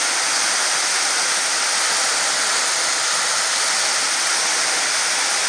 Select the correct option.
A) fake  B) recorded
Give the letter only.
B